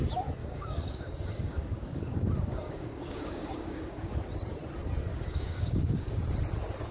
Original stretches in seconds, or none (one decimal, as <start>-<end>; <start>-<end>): 0.0-0.4; 4.1-5.1; 6.2-6.9